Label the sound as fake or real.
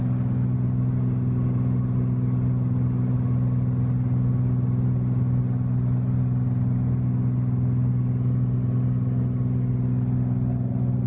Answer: real